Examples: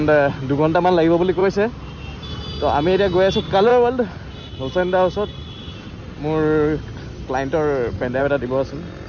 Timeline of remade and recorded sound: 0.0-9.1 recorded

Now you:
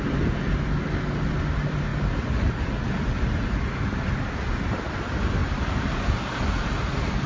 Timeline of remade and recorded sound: 0.0-5.4 recorded; 5.4-6.4 remade; 6.4-7.3 recorded